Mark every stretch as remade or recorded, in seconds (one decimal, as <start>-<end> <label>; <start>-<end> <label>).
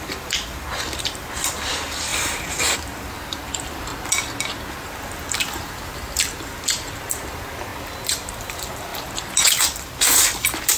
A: 0.0-3.9 remade; 3.9-4.7 recorded; 4.7-7.7 remade; 7.7-8.4 recorded; 8.4-10.8 remade